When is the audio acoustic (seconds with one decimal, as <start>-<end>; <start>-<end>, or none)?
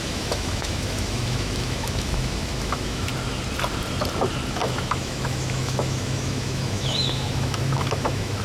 3.1-4.5